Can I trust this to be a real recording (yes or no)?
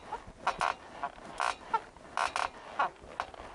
yes